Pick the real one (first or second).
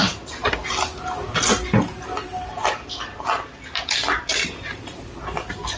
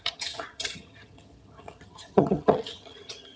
first